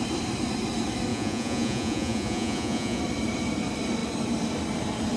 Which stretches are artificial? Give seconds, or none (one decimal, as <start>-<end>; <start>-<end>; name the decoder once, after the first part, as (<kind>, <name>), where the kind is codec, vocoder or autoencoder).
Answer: 1.1-3.0 (vocoder, Vocos)